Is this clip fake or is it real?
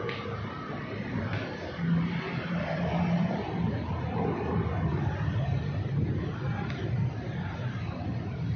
real